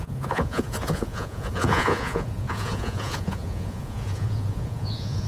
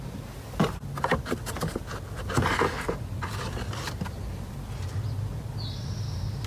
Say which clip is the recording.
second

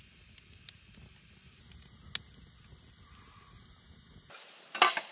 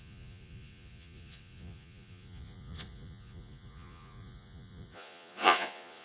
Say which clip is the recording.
first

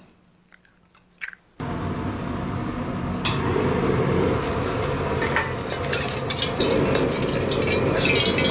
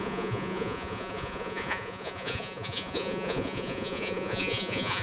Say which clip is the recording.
first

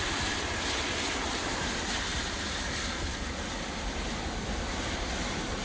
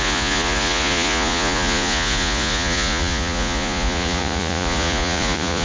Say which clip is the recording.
first